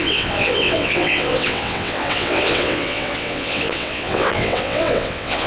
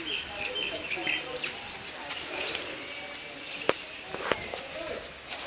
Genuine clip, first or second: second